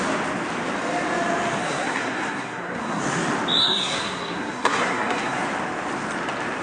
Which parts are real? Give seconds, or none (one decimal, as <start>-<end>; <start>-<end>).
0.0-1.6; 3.0-3.6; 5.4-6.6